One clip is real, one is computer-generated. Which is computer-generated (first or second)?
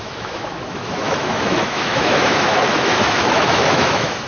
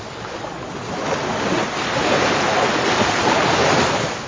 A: first